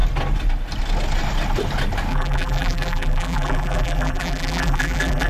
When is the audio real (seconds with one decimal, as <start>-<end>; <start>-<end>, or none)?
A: 0.0-2.1